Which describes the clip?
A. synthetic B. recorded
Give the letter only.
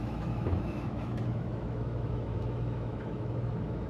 A